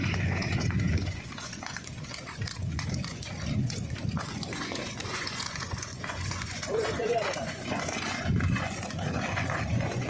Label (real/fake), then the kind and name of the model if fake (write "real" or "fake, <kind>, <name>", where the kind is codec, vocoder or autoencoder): fake, vocoder, Vocos